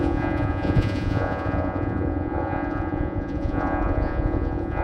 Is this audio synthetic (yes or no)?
yes